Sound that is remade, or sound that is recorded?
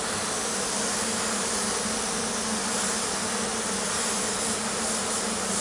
recorded